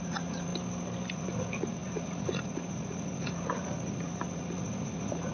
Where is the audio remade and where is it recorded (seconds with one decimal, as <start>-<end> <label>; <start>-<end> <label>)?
0.0-0.5 remade; 0.5-1.1 recorded; 1.1-5.3 remade